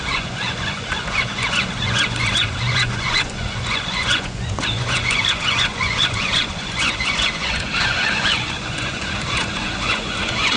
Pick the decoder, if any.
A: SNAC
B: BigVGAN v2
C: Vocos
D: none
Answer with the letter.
C